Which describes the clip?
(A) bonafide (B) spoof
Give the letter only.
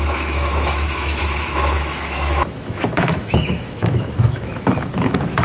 B